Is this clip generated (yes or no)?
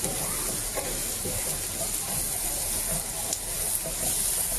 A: no